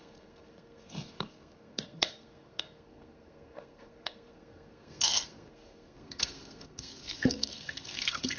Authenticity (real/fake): fake